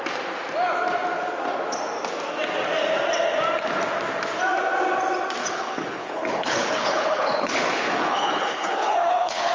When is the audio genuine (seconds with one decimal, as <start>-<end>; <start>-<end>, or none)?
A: 0.0-5.4